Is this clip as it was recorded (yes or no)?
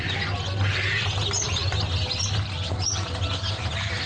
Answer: yes